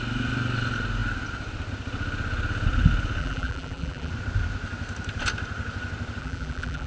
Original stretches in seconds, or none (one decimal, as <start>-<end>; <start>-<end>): 0.0-3.2; 4.1-6.2